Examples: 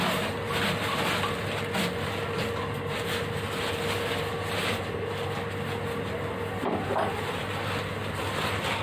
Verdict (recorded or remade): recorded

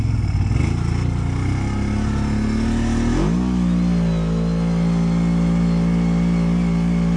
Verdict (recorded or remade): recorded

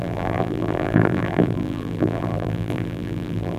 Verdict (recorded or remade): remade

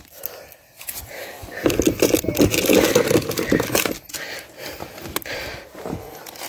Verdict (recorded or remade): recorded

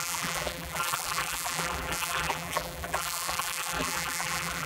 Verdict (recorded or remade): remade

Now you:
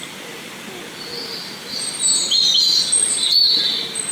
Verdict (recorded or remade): recorded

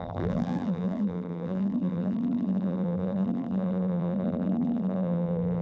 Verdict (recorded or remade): remade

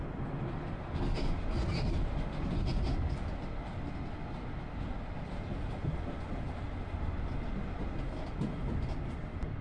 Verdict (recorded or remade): recorded